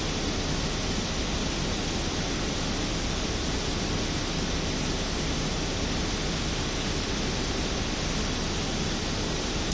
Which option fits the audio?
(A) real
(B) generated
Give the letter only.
B